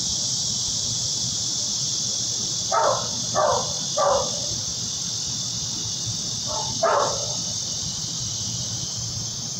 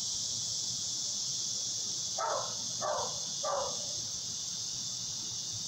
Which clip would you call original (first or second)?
first